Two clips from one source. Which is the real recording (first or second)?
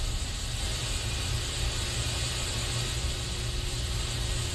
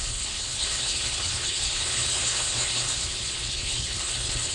first